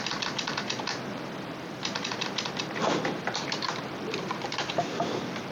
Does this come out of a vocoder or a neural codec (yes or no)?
yes